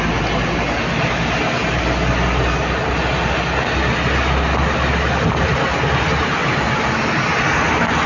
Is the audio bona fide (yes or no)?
yes